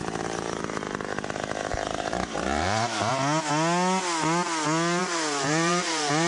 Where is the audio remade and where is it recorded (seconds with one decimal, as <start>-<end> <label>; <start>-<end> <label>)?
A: 0.0-0.6 remade; 0.6-1.7 recorded; 1.7-3.1 remade; 3.1-5.0 recorded; 5.0-6.3 remade